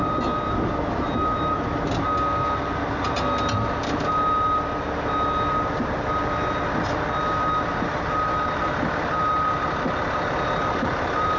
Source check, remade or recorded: recorded